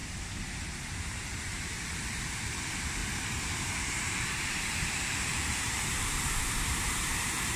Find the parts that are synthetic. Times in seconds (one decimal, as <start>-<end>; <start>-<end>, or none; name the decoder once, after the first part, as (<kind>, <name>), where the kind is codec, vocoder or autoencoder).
0.0-3.0 (vocoder, BigVGAN v2); 3.7-7.6